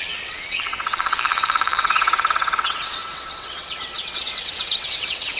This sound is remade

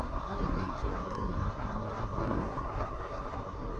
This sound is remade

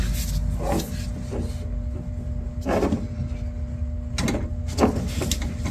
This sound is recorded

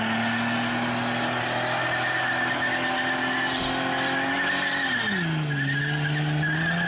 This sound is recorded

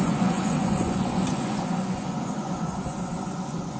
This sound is remade